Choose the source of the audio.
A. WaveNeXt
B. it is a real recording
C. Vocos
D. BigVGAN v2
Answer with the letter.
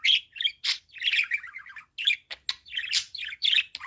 B